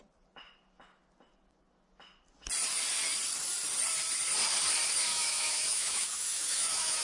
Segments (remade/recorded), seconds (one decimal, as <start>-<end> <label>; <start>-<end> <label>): 0.0-5.1 recorded; 5.1-7.0 remade